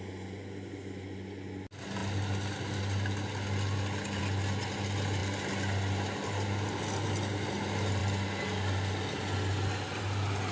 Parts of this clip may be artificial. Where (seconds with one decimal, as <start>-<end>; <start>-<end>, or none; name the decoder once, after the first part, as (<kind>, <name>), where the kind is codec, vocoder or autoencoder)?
none